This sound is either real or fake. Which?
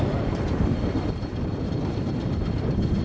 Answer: fake